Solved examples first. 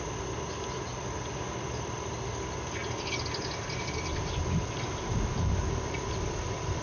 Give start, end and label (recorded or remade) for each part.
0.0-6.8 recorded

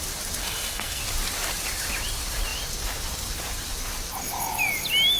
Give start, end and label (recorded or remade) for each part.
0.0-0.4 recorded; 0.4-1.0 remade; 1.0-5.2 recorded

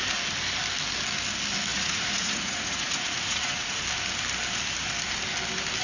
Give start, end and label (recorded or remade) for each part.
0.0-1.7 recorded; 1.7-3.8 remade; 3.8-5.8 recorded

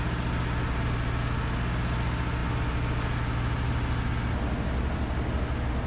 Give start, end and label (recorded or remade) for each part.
0.0-5.9 recorded

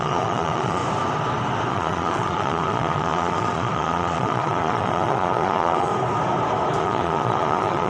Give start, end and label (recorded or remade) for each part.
0.0-0.8 remade; 0.8-1.7 recorded; 1.7-5.9 remade; 5.9-6.8 recorded; 6.8-7.9 remade

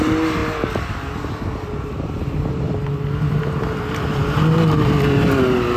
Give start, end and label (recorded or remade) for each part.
0.0-5.8 recorded

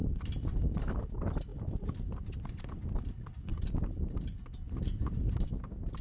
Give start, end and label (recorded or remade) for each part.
0.0-6.0 recorded